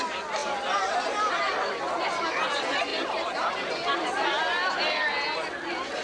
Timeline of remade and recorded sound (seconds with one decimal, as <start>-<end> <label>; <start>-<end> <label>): 0.0-6.0 recorded

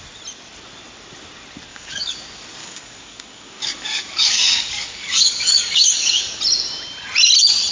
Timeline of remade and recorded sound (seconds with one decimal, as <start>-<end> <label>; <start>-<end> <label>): 0.0-1.7 recorded; 1.7-2.2 remade; 2.2-2.6 recorded; 2.6-6.4 remade; 6.4-7.7 recorded